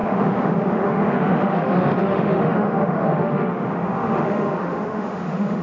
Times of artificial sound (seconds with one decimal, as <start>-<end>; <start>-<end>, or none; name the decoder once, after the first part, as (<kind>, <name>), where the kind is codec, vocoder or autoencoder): 0.0-5.6 (autoencoder, DAC-VAE)